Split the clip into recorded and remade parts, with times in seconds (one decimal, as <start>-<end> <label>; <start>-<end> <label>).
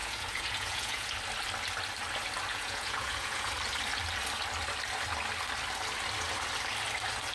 0.0-1.1 remade; 1.1-2.5 recorded; 2.5-3.5 remade; 3.5-7.3 recorded